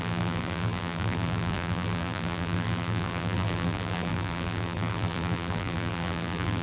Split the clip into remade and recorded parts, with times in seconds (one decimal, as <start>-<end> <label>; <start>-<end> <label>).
0.0-6.6 remade